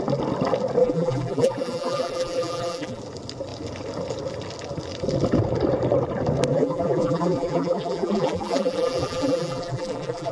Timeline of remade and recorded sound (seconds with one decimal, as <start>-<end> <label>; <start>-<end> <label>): 0.0-0.8 recorded; 0.8-3.0 remade; 3.0-6.5 recorded; 6.5-10.3 remade